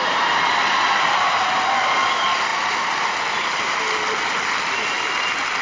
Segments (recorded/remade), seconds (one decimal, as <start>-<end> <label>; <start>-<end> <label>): 0.0-5.6 recorded

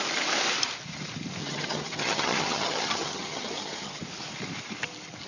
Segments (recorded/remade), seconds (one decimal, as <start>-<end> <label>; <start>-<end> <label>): 0.0-1.4 recorded; 1.4-4.0 remade; 4.0-5.3 recorded